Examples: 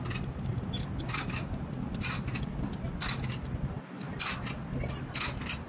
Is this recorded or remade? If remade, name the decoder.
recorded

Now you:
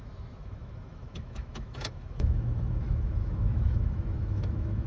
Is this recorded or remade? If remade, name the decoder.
remade, autoencoder, DAC-VAE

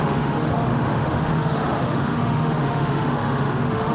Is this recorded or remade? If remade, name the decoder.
remade, autoencoder, DAC-VAE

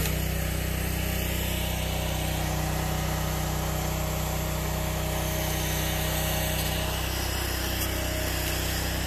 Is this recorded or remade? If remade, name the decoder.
recorded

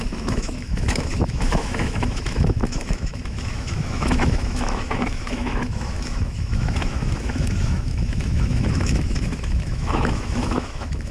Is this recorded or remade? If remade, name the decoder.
remade, autoencoder, DAC-VAE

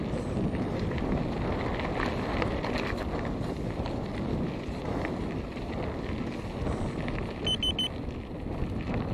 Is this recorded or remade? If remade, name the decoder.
recorded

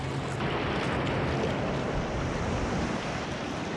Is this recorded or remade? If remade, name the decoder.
recorded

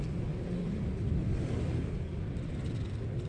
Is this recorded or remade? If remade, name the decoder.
recorded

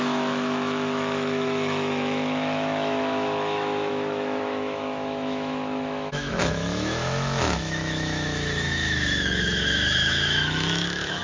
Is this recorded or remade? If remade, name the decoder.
remade, autoencoder, DAC-VAE